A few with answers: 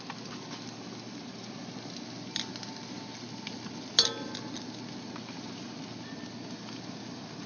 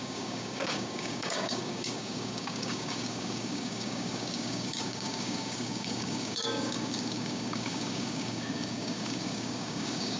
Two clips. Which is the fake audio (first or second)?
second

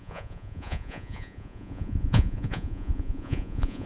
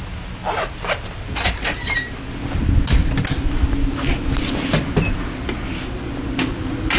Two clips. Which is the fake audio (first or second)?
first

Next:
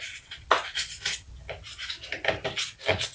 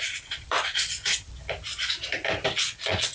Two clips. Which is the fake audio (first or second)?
second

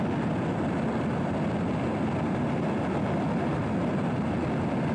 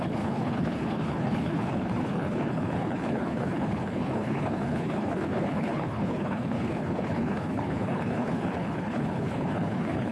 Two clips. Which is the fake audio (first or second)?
second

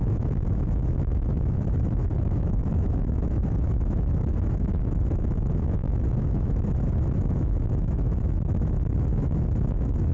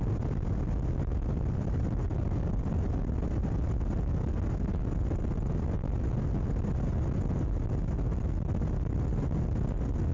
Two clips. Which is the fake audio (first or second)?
first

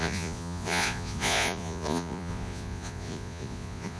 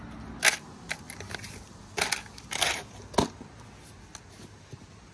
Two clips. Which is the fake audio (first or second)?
first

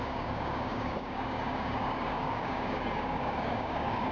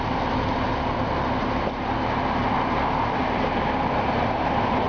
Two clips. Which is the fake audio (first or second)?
first